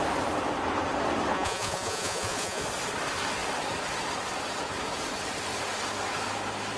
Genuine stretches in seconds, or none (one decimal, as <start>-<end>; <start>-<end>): 0.0-1.3; 2.6-6.8